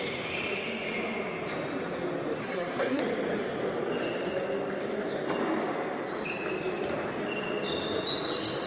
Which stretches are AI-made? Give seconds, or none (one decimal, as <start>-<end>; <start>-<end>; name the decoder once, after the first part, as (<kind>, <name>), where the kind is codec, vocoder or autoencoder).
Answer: 2.4-3.0 (codec, SNAC)